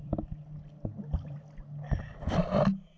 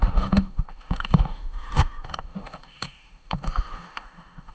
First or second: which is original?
first